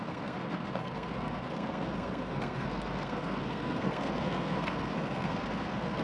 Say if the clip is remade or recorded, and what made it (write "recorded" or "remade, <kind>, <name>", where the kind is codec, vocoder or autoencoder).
remade, codec, SNAC